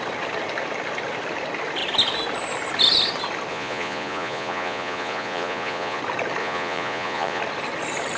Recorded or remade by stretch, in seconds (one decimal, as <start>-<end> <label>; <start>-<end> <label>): 0.0-3.5 recorded; 3.5-6.0 remade; 6.0-6.4 recorded; 6.4-7.4 remade; 7.4-8.2 recorded